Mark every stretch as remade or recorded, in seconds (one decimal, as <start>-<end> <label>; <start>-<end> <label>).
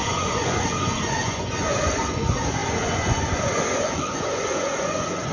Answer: 0.0-5.3 remade